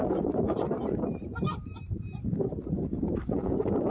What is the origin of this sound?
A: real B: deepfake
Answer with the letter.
B